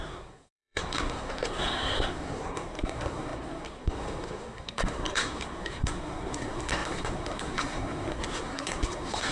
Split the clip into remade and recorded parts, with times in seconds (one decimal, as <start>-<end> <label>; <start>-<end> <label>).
0.0-9.3 remade